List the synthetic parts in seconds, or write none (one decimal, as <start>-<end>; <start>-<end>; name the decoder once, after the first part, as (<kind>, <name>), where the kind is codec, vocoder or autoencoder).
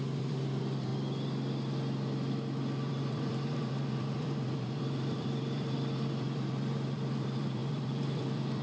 0.0-0.9 (vocoder, BigVGAN v2); 2.9-8.6